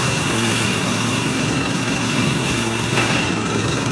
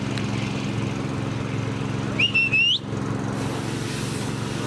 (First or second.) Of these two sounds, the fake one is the first